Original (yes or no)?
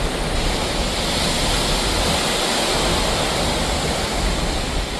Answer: yes